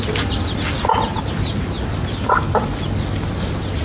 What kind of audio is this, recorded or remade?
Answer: recorded